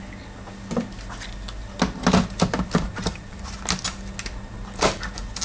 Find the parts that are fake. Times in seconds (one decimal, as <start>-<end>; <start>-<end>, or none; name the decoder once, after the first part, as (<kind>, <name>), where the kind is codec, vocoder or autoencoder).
2.9-3.4 (vocoder, BigVGAN v2)